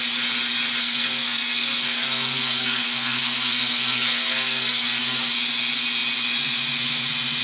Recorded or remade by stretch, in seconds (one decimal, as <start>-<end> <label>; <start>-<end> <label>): 0.0-0.8 recorded; 0.8-5.0 remade; 5.0-7.4 recorded